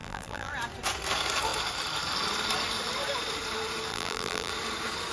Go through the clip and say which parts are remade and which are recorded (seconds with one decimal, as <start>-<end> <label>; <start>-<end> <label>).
0.0-0.5 remade; 0.5-3.9 recorded; 3.9-4.5 remade; 4.5-5.1 recorded